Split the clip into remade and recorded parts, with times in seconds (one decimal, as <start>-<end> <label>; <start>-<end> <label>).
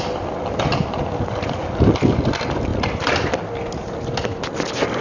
0.0-5.0 recorded